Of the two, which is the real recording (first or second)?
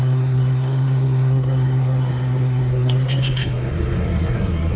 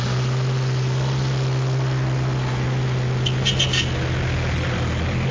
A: second